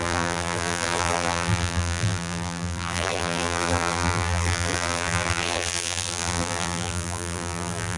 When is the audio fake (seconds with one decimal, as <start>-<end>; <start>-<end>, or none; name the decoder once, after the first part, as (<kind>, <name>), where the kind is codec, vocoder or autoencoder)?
0.0-8.0 (vocoder, BigVGAN v2)